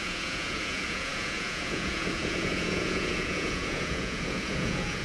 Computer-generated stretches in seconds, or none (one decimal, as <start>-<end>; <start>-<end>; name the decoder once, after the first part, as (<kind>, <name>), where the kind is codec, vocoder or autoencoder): 0.0-5.0 (vocoder, Vocos)